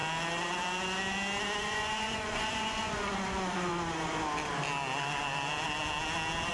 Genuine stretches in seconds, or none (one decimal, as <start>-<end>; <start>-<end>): 0.0-1.6; 3.7-6.5